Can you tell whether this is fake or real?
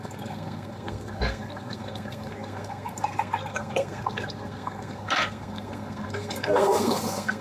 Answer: fake